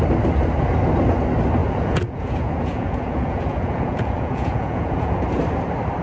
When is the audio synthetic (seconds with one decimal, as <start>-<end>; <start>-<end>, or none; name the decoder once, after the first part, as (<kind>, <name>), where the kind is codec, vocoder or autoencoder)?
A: 1.6-5.2 (vocoder, Vocos)